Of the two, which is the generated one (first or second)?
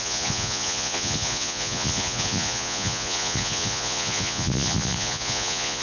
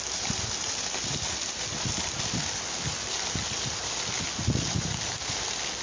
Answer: first